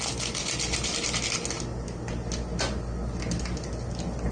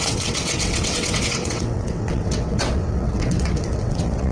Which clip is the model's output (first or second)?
second